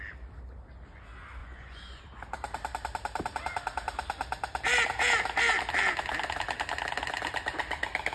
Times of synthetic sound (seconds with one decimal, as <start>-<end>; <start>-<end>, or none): 1.4-2.0